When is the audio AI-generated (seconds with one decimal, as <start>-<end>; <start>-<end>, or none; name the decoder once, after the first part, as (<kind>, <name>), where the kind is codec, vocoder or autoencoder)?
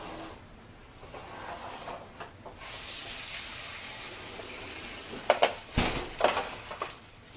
none